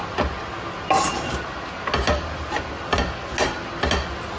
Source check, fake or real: real